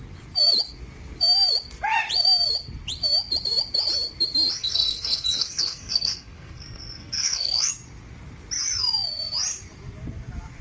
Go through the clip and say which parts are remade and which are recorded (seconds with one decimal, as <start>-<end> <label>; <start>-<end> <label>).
0.0-4.6 recorded; 4.6-7.7 remade; 7.7-10.6 recorded